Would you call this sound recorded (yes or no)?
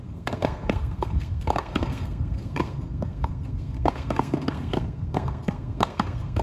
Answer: no